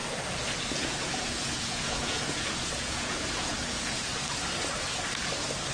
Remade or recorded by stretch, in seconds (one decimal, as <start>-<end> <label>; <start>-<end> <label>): 0.0-0.7 recorded; 0.7-4.1 remade; 4.1-5.7 recorded